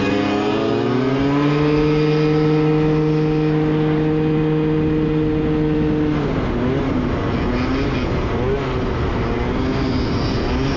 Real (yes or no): yes